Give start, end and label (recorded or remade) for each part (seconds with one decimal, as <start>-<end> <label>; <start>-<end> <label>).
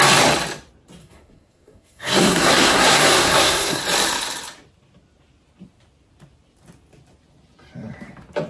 0.0-1.0 recorded; 1.0-3.8 remade; 3.8-8.5 recorded